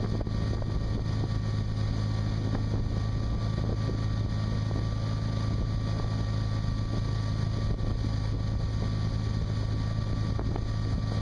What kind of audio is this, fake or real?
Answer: real